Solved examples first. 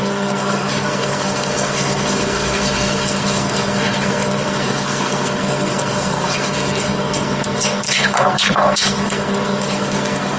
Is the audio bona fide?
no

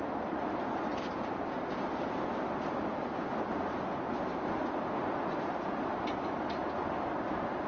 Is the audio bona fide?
yes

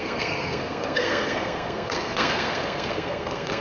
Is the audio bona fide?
no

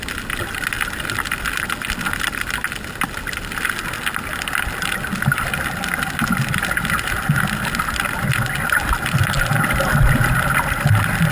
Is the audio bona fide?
yes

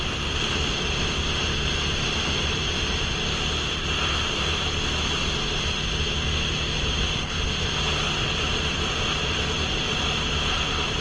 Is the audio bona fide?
yes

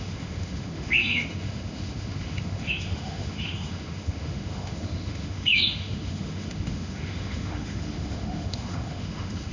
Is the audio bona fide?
no